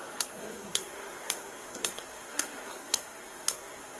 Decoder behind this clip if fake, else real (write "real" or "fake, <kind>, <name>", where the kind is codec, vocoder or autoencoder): fake, codec, SNAC